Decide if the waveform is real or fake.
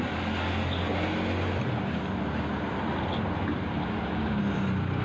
real